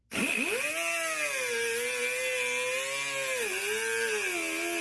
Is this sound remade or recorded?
recorded